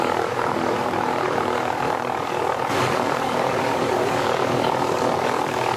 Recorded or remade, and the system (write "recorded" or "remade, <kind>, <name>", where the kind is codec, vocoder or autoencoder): remade, codec, DAC